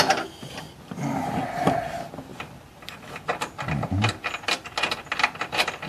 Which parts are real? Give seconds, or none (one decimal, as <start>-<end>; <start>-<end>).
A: 0.0-5.9

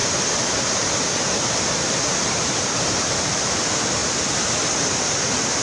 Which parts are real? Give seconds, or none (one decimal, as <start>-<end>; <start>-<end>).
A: 4.0-5.6